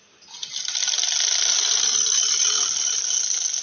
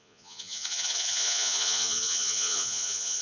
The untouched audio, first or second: first